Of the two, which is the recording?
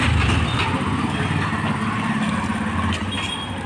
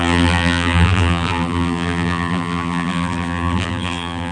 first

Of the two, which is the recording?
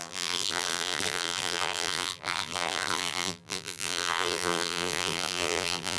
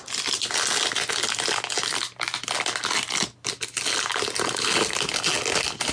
second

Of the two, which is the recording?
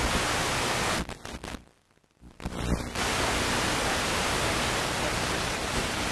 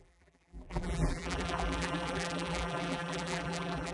first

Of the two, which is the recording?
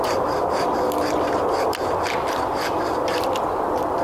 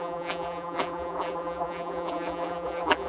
first